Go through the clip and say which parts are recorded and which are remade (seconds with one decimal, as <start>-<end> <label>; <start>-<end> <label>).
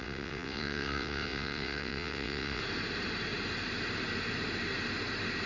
0.0-2.6 remade; 2.6-5.5 recorded